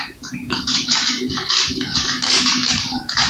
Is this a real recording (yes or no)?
no